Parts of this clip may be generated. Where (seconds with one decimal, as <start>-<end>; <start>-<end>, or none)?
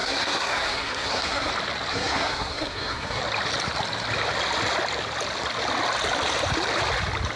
0.0-1.5; 1.9-3.2